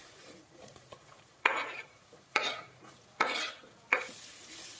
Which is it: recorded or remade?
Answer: remade